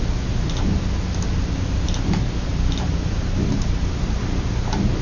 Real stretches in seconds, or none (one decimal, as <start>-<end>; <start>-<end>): 0.0-2.5; 4.2-5.0